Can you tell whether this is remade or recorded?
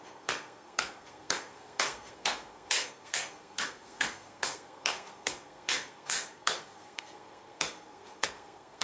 remade